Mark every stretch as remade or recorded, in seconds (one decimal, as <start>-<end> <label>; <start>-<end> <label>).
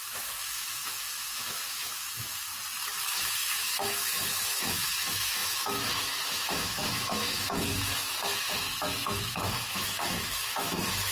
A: 0.0-2.5 remade; 2.5-3.1 recorded; 3.1-11.1 remade